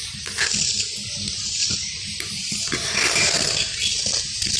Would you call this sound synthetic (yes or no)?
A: no